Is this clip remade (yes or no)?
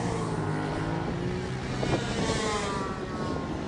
no